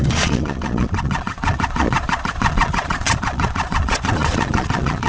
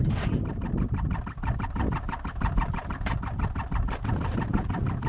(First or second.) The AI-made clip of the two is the first